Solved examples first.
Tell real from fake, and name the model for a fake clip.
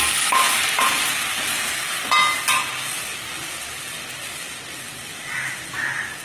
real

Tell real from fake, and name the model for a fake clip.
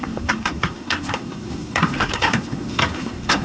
fake, codec, SNAC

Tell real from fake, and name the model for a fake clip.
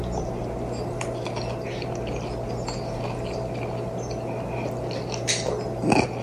real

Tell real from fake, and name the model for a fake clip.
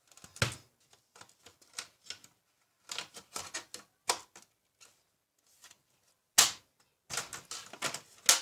real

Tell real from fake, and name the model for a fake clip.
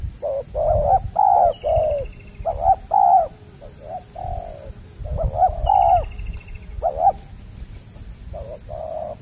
real